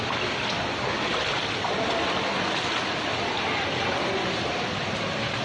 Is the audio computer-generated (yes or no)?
no